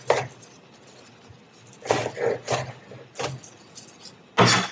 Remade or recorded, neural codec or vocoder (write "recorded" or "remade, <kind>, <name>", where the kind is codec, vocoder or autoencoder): recorded